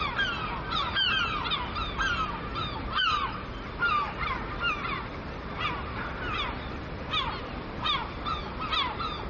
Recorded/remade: recorded